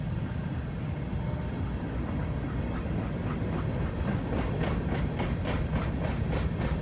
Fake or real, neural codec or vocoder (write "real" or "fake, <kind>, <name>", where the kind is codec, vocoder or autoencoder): real